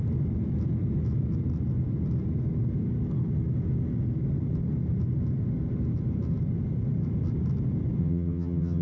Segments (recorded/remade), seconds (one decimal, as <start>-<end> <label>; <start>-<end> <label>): 0.0-8.0 recorded; 8.0-8.8 remade